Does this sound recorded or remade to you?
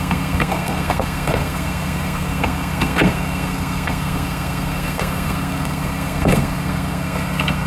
remade